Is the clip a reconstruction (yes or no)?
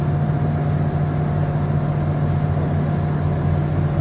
no